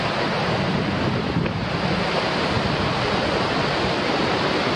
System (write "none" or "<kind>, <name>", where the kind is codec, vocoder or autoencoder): none